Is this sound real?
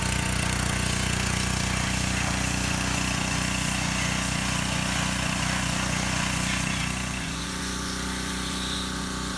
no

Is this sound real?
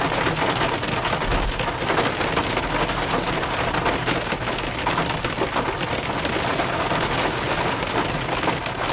yes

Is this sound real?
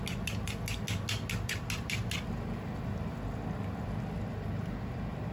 yes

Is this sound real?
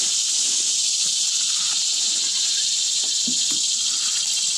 yes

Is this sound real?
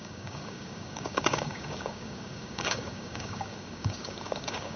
no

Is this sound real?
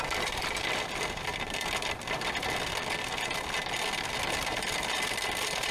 yes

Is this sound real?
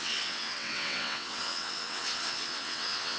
no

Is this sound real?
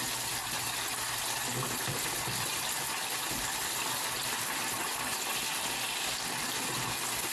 yes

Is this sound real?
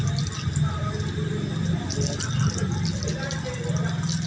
yes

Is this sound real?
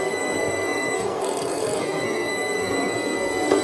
no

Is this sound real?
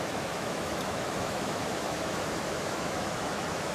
no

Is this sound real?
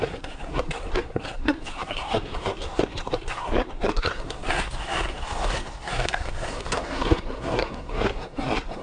no